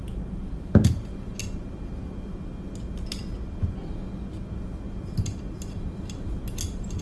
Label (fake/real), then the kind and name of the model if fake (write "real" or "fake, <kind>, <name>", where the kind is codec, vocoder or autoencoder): real